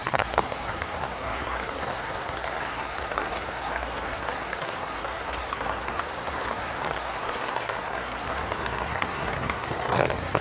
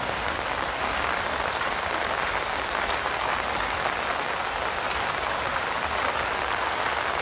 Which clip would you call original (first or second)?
second